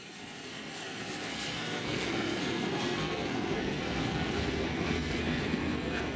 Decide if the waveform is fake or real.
fake